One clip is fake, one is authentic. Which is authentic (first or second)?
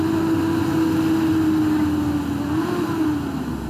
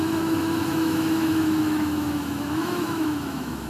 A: first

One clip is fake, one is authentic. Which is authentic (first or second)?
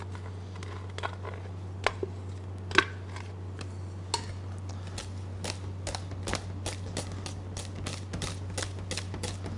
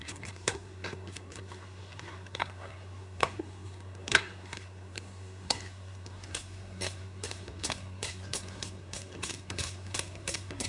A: first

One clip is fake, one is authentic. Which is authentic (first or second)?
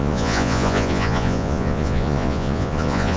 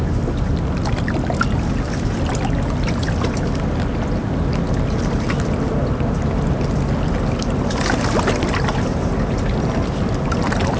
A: second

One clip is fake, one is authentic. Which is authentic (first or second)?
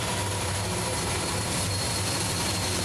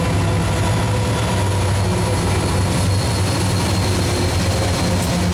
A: second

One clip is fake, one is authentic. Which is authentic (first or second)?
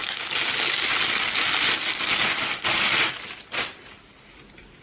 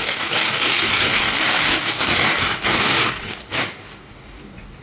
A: first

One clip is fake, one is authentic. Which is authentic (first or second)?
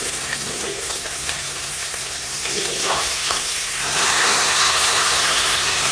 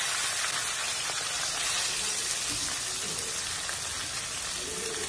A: second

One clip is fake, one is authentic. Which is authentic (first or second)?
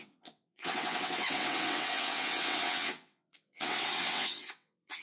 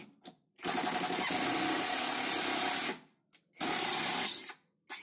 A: second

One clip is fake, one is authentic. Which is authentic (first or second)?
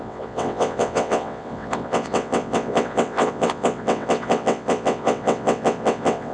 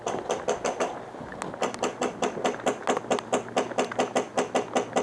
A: second